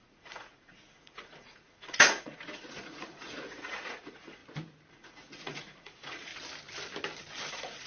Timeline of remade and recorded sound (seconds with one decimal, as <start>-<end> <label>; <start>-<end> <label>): 0.0-4.4 remade; 4.4-4.9 recorded; 4.9-6.3 remade; 6.3-7.5 recorded; 7.5-7.9 remade